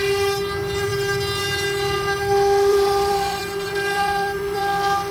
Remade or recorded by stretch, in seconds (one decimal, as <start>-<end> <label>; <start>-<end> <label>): 0.0-2.7 recorded; 2.7-4.6 remade; 4.6-5.1 recorded